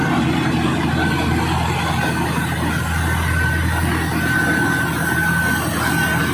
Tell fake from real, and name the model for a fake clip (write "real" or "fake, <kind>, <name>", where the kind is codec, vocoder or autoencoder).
real